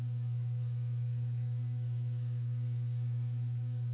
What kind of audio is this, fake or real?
fake